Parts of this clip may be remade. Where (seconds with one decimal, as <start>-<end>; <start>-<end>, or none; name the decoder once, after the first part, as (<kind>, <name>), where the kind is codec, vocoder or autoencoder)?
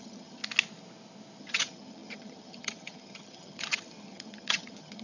0.0-0.4 (vocoder, HiFi-GAN); 1.4-5.0